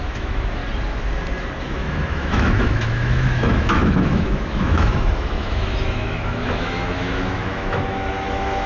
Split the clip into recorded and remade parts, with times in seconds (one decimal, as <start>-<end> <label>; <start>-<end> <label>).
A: 0.0-0.6 remade; 0.6-1.6 recorded; 1.6-8.7 remade